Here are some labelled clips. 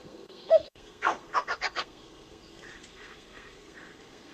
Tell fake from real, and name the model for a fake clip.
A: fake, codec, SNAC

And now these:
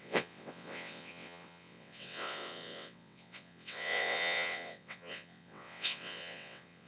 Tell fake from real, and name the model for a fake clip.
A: fake, vocoder, WaveNeXt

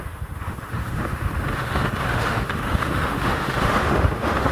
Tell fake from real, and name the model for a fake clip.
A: fake, autoencoder, DAC-VAE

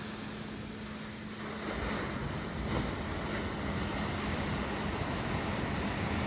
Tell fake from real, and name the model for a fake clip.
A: real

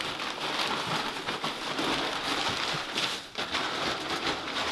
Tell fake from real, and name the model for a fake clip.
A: real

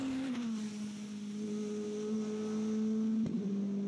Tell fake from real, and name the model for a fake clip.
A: real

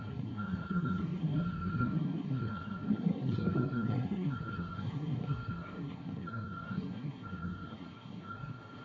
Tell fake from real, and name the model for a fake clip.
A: fake, codec, SNAC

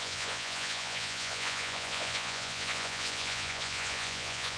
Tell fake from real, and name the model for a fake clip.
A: fake, vocoder, Vocos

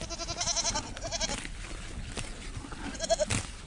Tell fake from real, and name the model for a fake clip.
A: real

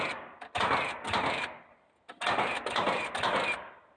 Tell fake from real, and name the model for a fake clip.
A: real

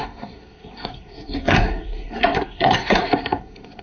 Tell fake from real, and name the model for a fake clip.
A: fake, codec, SNAC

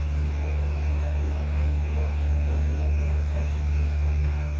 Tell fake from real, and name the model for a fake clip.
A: fake, codec, DAC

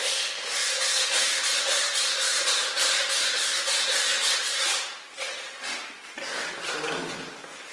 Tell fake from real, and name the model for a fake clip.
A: real